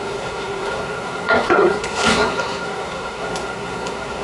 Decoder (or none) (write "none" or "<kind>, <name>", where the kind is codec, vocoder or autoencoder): codec, SNAC